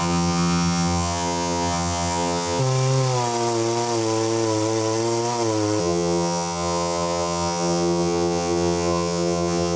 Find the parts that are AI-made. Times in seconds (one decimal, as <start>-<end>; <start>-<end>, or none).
0.0-2.6; 5.8-9.8